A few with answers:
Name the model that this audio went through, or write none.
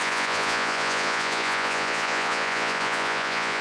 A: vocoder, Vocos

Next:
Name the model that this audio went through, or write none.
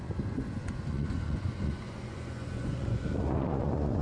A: vocoder, Vocos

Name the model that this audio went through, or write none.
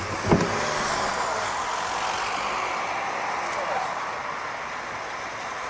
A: none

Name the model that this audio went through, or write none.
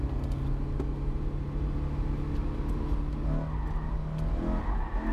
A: none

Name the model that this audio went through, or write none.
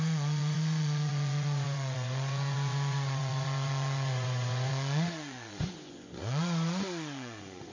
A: vocoder, Vocos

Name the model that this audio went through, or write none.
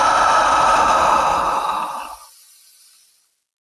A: none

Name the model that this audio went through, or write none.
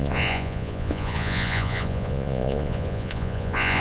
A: vocoder, Vocos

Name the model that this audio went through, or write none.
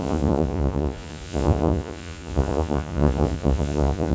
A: vocoder, Vocos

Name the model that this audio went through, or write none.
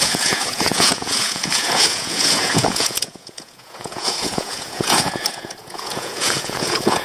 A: vocoder, Vocos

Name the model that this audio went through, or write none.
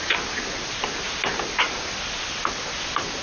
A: none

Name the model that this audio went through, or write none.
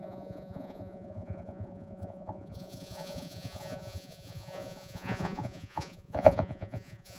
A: vocoder, Vocos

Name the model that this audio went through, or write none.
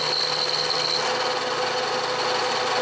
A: none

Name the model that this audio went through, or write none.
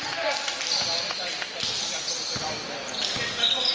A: none